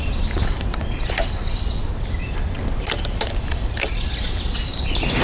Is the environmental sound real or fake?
fake